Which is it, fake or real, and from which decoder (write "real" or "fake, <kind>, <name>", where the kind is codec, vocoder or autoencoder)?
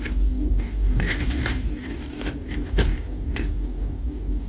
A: fake, codec, DAC